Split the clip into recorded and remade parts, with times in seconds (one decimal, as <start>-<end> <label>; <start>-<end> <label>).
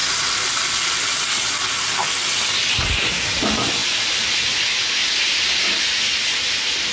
0.0-3.8 recorded; 3.8-4.4 remade; 4.4-6.9 recorded